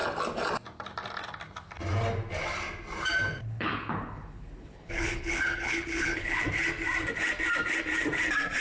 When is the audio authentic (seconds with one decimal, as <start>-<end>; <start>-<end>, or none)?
0.0-3.4; 6.4-8.6